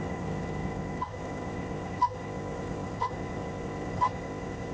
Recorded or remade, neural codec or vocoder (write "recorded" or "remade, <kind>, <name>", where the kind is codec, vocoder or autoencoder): remade, codec, ZipCodec